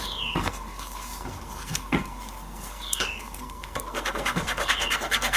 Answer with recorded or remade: remade